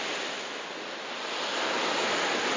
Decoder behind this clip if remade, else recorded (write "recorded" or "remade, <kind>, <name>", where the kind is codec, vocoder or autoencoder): recorded